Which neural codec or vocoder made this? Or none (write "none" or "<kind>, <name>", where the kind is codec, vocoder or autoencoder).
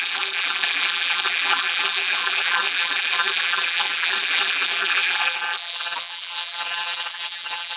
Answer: vocoder, BigVGAN v2